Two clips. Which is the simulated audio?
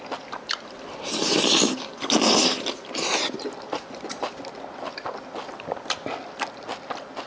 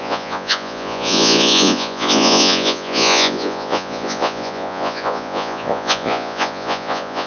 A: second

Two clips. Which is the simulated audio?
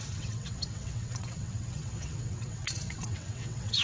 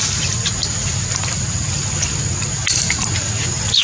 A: first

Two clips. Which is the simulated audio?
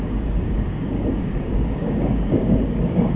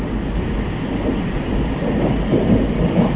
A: first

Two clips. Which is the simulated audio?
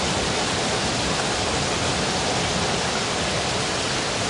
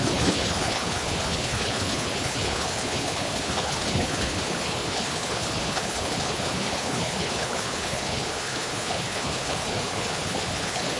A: second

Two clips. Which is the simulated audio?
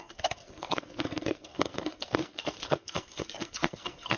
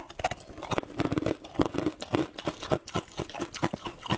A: first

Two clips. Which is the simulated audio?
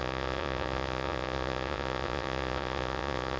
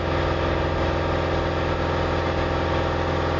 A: first